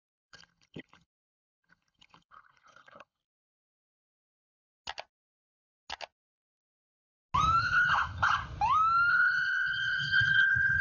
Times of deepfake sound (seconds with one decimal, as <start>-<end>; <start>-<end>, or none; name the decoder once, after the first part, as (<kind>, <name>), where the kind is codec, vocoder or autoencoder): 0.0-3.2 (codec, HILCodec); 7.6-8.4; 9.1-10.8